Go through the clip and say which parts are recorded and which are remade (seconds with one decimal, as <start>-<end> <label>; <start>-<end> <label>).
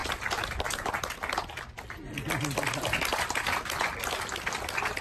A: 0.0-5.0 recorded